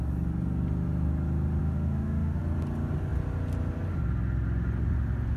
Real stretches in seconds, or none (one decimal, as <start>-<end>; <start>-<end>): 0.0-1.6; 2.4-5.4

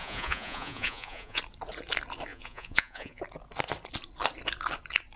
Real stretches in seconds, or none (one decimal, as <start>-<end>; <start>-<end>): 1.4-2.3; 3.2-5.2

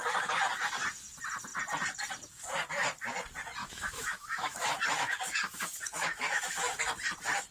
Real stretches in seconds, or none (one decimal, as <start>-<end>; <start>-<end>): 0.0-3.6; 6.8-7.5

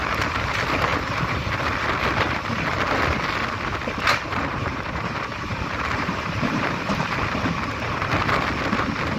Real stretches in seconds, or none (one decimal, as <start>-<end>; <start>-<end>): 0.0-0.9; 1.5-4.3; 7.1-9.2

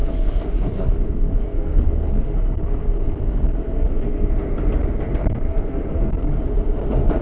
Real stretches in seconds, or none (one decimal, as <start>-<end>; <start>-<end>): 4.3-5.2; 6.4-7.2

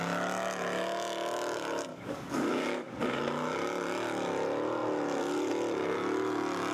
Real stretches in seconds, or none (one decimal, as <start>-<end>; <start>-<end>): 0.0-1.9; 3.2-6.7